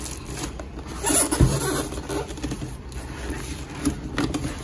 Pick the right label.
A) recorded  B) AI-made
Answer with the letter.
A